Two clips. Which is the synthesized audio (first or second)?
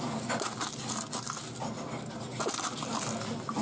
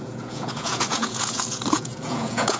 second